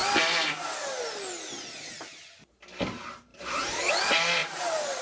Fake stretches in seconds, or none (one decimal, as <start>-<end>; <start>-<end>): 3.3-3.9; 4.4-5.0